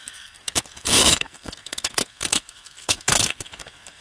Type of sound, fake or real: fake